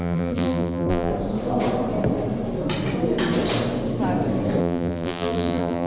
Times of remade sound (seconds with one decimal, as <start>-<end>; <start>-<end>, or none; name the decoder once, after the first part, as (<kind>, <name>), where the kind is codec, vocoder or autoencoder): 0.0-1.1 (vocoder, BigVGAN v2); 4.6-5.9